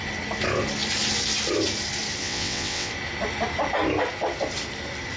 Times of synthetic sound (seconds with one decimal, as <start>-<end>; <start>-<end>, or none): 2.2-2.9